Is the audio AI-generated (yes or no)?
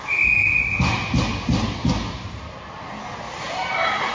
no